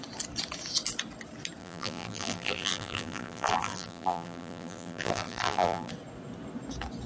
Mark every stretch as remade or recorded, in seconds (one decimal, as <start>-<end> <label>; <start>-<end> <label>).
0.0-1.6 recorded; 1.6-5.9 remade; 5.9-7.1 recorded